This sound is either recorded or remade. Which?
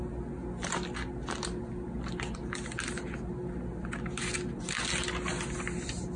recorded